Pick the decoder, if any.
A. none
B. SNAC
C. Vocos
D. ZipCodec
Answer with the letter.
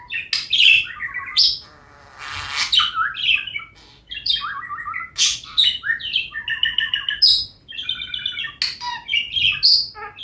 A